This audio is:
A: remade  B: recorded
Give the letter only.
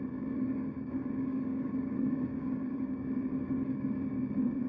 A